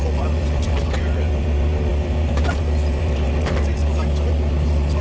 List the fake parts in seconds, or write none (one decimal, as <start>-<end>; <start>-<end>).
0.0-3.8; 4.3-5.0